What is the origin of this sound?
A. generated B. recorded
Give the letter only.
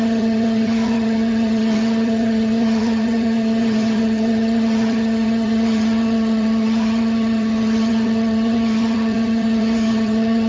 A